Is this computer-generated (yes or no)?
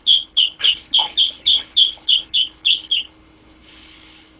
yes